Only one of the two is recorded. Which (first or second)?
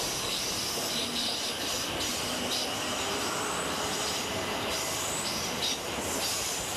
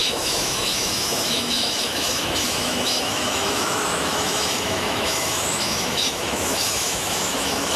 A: first